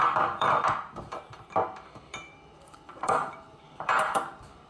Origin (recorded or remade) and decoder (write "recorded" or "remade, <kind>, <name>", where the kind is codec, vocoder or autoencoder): remade, vocoder, BigVGAN v2